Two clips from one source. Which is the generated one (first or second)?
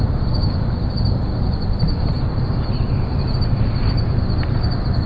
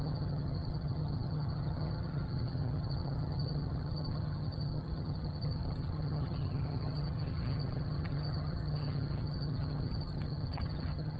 second